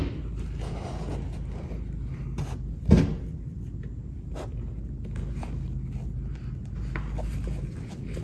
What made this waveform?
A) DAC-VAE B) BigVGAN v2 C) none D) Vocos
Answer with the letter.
C